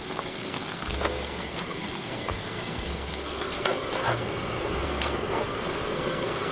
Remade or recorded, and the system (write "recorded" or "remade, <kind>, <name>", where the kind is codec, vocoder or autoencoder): remade, codec, SNAC